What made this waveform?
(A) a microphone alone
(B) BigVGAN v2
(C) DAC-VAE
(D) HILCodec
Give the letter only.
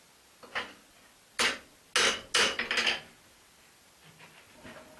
A